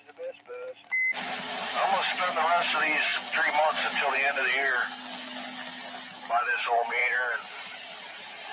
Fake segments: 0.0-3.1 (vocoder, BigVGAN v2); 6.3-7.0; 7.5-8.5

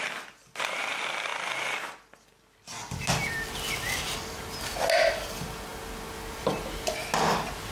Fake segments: none

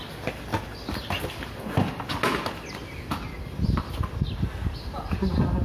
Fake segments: none

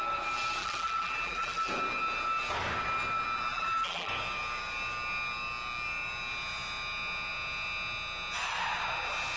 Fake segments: 0.6-1.7 (vocoder, BigVGAN v2); 3.5-4.1

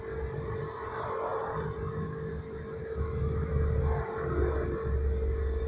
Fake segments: none

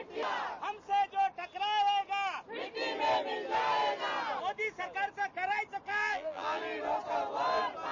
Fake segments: 5.9-6.6 (vocoder, BigVGAN v2)